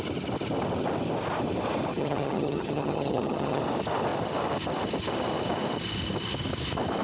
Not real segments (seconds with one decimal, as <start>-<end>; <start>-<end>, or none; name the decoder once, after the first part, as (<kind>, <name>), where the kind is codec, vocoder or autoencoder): 1.9-3.6 (vocoder, HiFi-GAN)